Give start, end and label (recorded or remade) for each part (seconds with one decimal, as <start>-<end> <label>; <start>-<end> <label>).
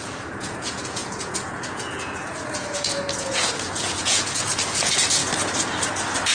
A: 0.0-5.2 remade; 5.2-6.3 recorded